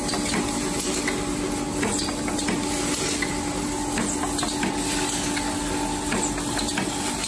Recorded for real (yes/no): yes